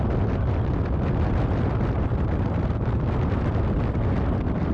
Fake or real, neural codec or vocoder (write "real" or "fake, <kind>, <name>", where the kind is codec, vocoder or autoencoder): real